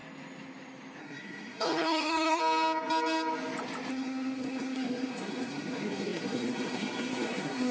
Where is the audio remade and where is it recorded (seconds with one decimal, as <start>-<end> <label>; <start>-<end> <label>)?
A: 0.0-1.0 recorded; 1.0-2.4 remade; 2.4-3.9 recorded; 3.9-7.7 remade